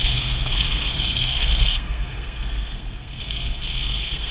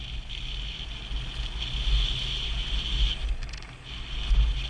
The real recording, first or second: second